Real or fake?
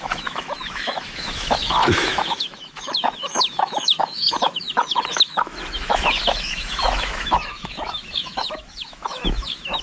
fake